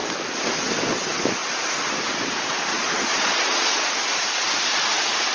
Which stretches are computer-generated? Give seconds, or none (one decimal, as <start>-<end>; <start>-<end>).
2.7-3.9